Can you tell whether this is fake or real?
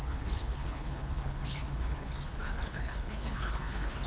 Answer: fake